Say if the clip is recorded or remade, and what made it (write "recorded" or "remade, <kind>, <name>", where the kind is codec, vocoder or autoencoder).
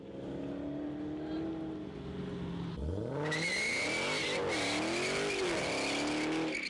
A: recorded